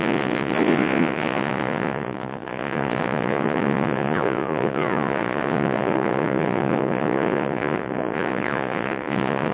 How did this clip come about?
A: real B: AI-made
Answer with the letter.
B